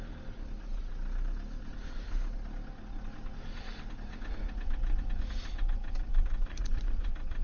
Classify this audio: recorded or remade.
recorded